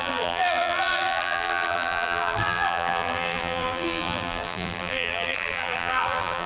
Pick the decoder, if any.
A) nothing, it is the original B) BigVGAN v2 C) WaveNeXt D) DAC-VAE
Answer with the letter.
B